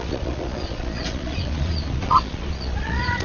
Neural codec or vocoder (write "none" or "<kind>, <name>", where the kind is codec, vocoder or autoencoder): vocoder, Vocos